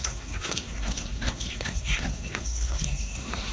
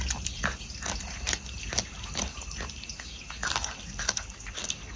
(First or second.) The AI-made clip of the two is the first